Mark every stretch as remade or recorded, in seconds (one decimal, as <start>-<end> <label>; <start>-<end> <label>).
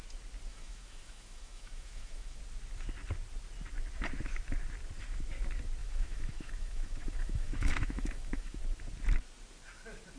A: 0.0-0.5 recorded; 0.5-2.4 remade; 2.4-5.8 recorded; 5.8-8.6 remade; 8.6-10.2 recorded